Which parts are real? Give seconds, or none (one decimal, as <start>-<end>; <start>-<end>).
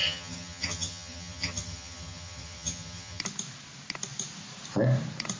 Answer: 3.2-5.4